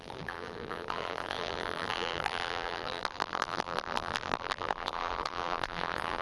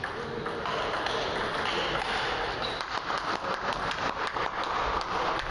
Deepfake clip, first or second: first